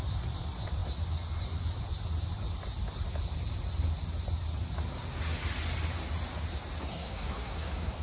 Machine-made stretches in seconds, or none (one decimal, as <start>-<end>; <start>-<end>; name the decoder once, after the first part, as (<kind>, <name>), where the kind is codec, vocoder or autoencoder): 6.9-8.0 (codec, SNAC)

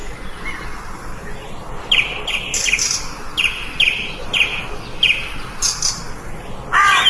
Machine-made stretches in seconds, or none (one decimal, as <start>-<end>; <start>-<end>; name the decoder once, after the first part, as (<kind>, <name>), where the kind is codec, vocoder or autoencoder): none

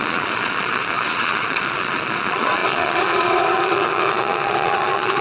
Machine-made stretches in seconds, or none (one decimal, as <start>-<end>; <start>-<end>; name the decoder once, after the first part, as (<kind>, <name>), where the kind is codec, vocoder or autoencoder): 0.0-5.2 (vocoder, Vocos)